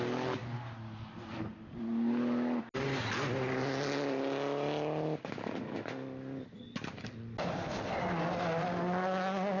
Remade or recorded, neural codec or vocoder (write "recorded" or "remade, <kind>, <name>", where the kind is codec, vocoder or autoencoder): recorded